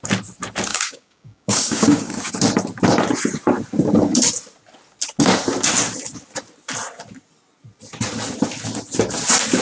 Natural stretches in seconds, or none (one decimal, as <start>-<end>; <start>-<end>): 0.0-0.7; 2.3-9.6